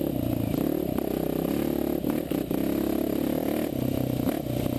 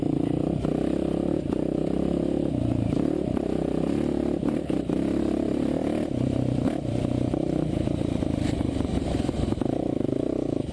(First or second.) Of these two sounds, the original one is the first